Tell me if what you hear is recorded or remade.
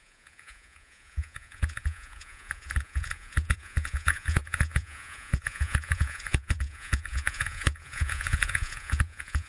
remade